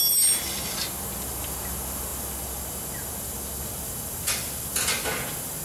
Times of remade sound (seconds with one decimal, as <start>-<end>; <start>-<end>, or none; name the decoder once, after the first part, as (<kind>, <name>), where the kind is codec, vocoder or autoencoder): none